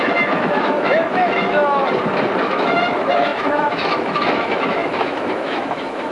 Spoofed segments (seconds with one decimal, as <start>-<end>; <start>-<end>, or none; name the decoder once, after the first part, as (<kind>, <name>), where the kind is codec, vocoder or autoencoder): 0.0-1.8 (autoencoder, DAC-VAE); 2.4-6.1